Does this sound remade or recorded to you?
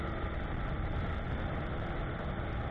recorded